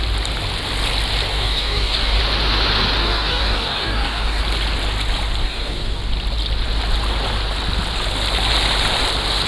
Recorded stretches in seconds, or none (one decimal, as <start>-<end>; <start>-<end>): 0.0-1.3; 2.2-3.0; 4.4-5.4; 6.0-9.5